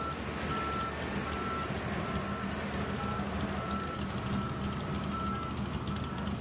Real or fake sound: real